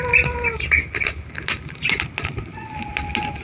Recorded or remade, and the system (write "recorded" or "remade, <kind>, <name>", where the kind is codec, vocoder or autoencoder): recorded